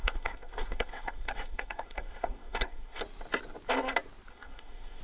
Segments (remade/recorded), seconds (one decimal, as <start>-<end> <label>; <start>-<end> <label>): 0.0-3.0 remade; 3.0-4.3 recorded; 4.3-5.0 remade